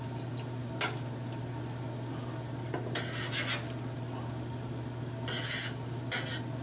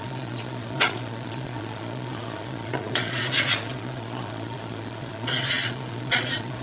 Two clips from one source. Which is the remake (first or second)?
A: second